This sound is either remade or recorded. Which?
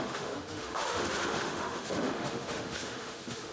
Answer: remade